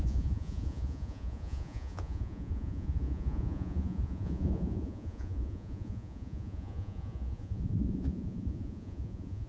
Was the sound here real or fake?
fake